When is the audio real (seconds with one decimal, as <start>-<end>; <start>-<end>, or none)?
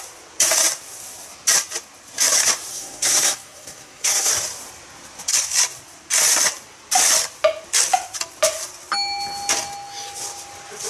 0.0-2.7; 4.3-10.9